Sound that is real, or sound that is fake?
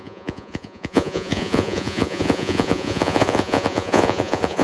fake